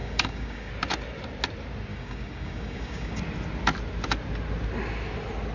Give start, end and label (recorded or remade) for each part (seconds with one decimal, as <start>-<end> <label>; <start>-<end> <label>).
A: 0.0-0.7 remade; 0.7-1.9 recorded; 1.9-3.2 remade; 3.2-5.5 recorded